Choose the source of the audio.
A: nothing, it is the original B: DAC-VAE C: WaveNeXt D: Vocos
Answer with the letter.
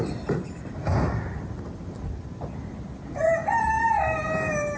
A